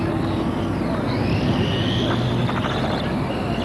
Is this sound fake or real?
real